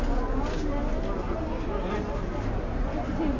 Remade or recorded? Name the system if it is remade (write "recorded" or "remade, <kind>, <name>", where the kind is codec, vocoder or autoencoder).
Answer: recorded